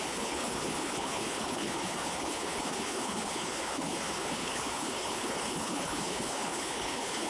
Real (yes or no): no